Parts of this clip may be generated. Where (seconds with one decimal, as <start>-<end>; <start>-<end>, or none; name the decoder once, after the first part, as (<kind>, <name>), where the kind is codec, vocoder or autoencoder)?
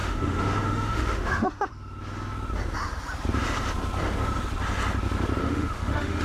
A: 0.0-1.7 (autoencoder, DAC-VAE); 5.4-6.2